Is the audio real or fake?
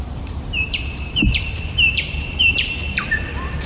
fake